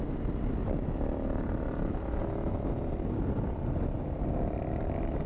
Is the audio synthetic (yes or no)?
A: no